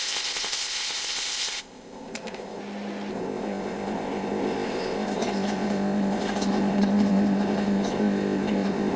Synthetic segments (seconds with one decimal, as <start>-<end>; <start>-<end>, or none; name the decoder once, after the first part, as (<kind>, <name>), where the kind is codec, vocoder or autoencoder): 0.0-2.6 (codec, ZipCodec); 3.1-9.0